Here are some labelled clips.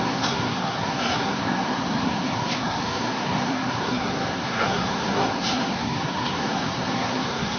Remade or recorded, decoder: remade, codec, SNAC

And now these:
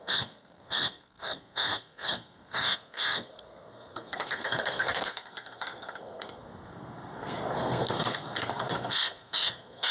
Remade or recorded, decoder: remade, codec, SNAC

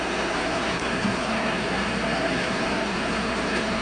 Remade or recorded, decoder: remade, codec, SNAC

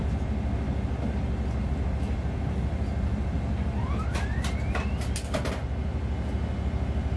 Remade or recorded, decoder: recorded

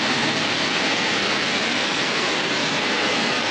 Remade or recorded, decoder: remade, codec, SNAC